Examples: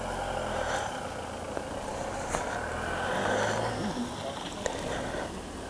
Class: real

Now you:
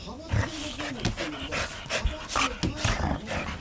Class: real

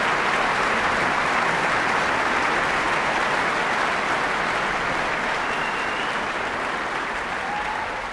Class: real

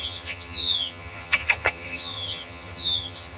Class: fake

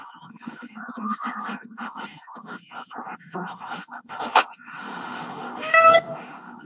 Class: fake